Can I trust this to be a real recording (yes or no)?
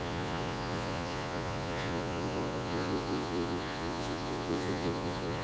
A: no